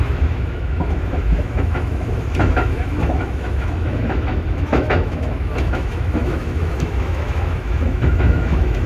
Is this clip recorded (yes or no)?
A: no